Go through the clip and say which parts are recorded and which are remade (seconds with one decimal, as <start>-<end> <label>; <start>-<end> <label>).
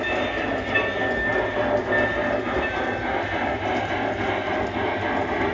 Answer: 0.0-5.5 recorded